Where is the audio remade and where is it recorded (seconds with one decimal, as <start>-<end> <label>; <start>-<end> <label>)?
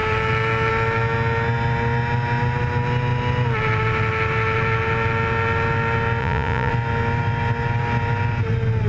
0.0-6.2 recorded; 6.2-6.7 remade; 6.7-8.9 recorded